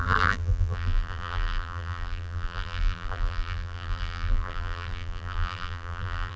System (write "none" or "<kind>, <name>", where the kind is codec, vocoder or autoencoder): vocoder, BigVGAN v2